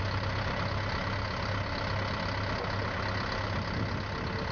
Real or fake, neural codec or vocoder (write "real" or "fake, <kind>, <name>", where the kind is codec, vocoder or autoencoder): real